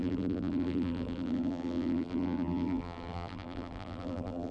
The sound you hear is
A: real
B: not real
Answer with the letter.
B